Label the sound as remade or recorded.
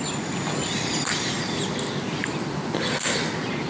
recorded